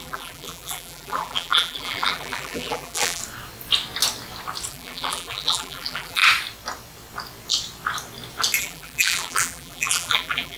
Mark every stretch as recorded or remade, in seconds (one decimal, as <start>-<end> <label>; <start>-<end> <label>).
0.0-3.2 remade; 3.2-4.7 recorded; 4.7-6.2 remade; 6.2-8.6 recorded; 8.6-10.6 remade